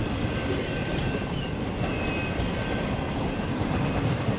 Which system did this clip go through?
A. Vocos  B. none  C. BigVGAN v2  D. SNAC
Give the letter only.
C